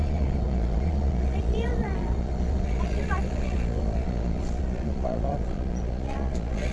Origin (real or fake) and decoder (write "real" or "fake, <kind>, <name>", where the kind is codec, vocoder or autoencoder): fake, vocoder, Vocos